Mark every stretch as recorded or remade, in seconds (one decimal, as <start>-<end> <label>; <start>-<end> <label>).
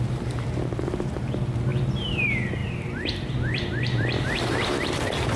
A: 0.0-5.4 remade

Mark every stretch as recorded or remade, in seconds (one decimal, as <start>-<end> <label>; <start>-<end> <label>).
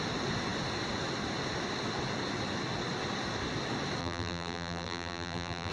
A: 0.0-4.0 recorded; 4.0-5.7 remade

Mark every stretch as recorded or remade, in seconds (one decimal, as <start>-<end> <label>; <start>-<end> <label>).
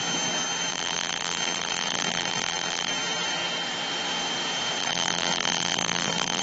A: 0.0-0.7 recorded; 0.7-2.9 remade; 2.9-4.8 recorded; 4.8-6.4 remade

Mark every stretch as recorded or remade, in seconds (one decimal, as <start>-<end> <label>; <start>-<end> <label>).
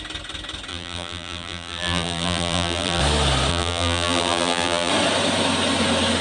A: 0.0-0.7 recorded; 0.7-3.0 remade; 3.0-3.5 recorded; 3.5-4.9 remade; 4.9-6.2 recorded